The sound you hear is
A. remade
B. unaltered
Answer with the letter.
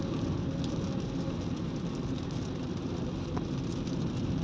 B